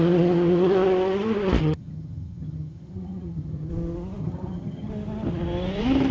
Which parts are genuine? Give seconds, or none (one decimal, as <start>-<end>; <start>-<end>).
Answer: 0.0-1.6; 3.7-4.2; 4.9-6.1